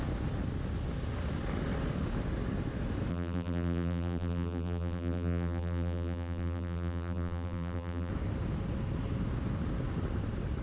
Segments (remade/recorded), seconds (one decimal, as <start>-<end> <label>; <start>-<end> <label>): 0.0-3.1 recorded; 3.1-8.1 remade; 8.1-10.6 recorded